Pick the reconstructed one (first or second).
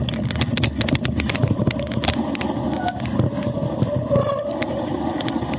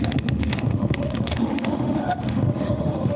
second